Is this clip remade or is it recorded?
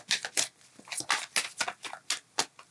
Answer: recorded